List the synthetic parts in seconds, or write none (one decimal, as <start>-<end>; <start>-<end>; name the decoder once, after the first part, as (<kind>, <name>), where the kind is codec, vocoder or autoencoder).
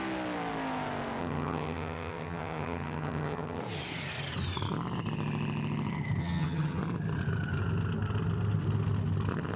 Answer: 1.2-3.6 (vocoder, HiFi-GAN); 6.2-6.8